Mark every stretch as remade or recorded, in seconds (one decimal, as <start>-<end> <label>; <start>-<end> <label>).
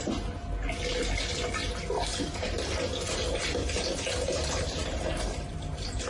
0.0-2.1 recorded; 2.1-6.1 remade